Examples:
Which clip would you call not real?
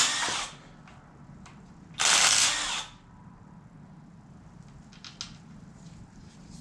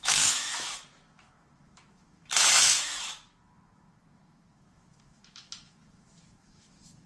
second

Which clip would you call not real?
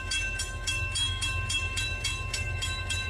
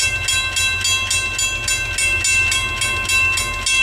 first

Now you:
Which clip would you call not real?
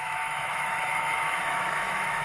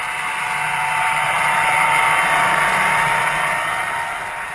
first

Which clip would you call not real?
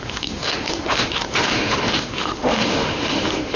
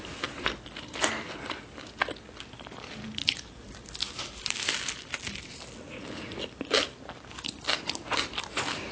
first